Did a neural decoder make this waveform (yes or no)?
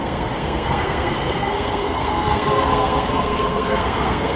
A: yes